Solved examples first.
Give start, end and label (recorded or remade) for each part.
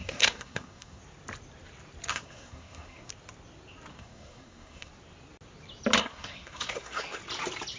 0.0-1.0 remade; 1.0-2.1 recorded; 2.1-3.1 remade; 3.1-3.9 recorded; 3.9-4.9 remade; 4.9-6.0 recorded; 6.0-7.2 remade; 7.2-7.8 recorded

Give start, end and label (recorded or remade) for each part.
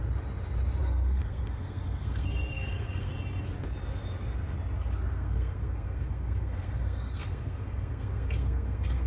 0.0-0.8 recorded; 0.8-3.1 remade; 3.1-5.1 recorded; 5.1-9.1 remade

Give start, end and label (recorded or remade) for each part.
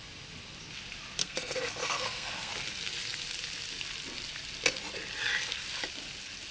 0.0-1.2 recorded; 1.2-2.5 remade; 2.5-6.5 recorded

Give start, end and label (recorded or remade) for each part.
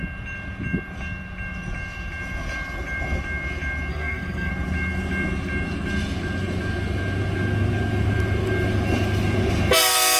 0.0-3.9 recorded; 3.9-4.5 remade; 4.5-10.2 recorded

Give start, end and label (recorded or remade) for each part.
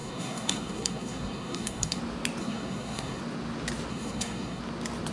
0.0-2.0 remade; 2.0-2.4 recorded; 2.4-3.2 remade; 3.2-3.9 recorded; 3.9-4.6 remade; 4.6-5.1 recorded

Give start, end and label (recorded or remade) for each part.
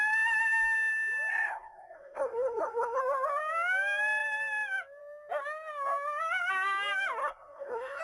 0.0-1.3 recorded; 1.3-3.0 remade; 3.0-7.2 recorded; 7.2-8.0 remade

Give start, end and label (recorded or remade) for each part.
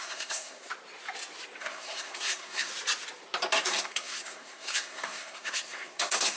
0.0-0.7 remade; 0.7-1.6 recorded; 1.6-2.7 remade; 2.7-3.7 recorded; 3.7-6.4 remade